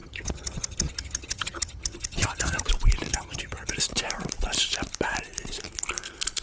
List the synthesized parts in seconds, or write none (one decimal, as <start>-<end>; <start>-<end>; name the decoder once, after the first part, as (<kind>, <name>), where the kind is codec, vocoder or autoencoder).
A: 0.0-2.7 (vocoder, HiFi-GAN); 3.1-3.7